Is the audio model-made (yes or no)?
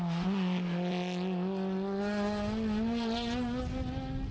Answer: no